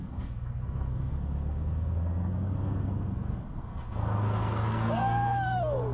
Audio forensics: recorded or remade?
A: remade